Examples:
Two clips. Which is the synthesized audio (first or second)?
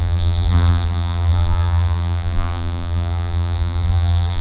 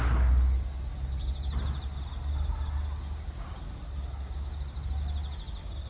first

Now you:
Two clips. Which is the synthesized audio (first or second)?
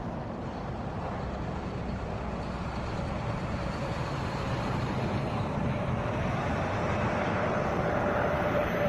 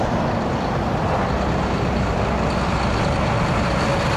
first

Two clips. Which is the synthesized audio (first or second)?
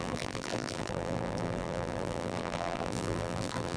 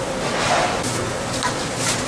first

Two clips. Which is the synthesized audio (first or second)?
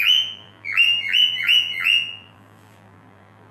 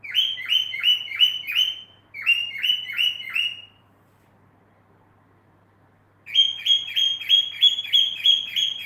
first